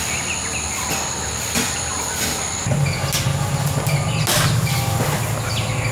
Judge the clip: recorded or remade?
recorded